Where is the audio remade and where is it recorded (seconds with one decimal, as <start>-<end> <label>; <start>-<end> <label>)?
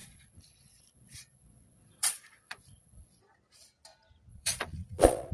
0.0-3.2 remade; 3.2-4.3 recorded; 4.3-5.3 remade